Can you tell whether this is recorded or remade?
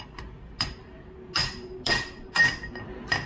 recorded